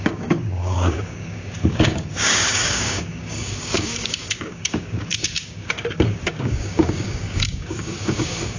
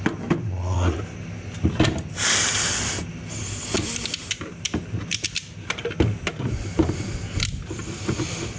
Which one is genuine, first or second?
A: second